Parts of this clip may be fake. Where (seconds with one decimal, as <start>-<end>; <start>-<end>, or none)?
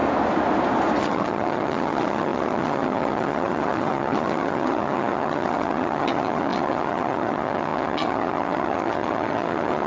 1.0-9.9